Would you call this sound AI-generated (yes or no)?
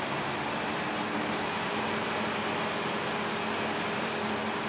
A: no